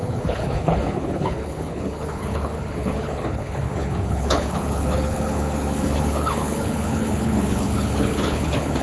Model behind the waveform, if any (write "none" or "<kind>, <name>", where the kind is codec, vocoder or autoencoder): codec, HILCodec